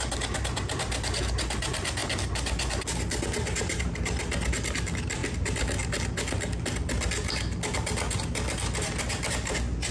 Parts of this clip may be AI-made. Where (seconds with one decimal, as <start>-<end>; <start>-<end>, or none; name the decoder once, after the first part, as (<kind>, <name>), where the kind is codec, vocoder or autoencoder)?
none